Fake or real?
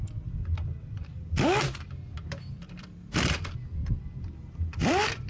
fake